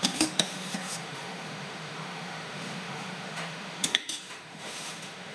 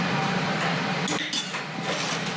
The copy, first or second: first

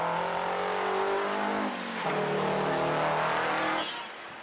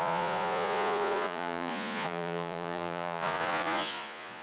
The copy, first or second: second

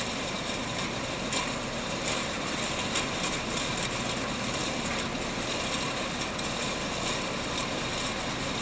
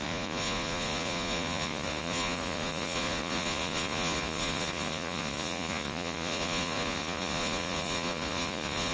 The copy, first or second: second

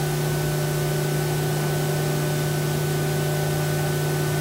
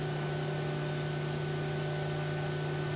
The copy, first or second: second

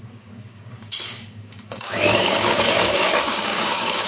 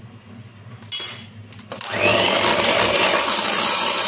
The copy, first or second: first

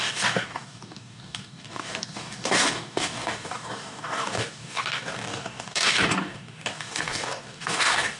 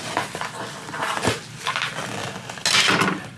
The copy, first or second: first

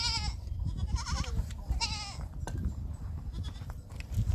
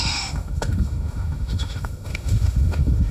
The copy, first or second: second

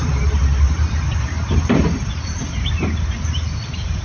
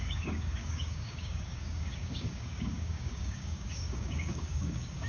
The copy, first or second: second